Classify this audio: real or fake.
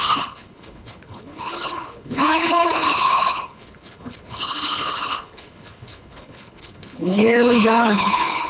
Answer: fake